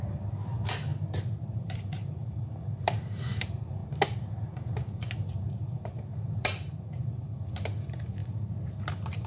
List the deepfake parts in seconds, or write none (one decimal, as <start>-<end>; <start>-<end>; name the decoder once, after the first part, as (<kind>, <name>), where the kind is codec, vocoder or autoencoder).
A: 0.0-0.9 (vocoder, BigVGAN v2); 1.4-3.8; 4.4-8.2